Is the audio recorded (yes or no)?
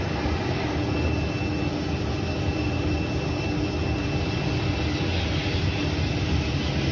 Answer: yes